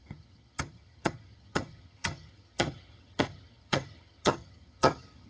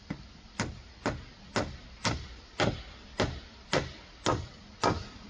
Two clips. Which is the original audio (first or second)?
second